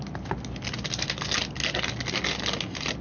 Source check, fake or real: real